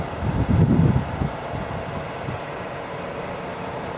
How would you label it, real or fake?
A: real